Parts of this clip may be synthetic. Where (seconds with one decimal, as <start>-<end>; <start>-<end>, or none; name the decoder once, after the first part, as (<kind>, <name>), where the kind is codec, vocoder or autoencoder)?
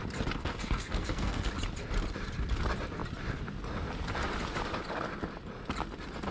0.4-1.5 (codec, SNAC)